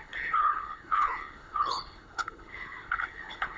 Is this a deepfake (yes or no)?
yes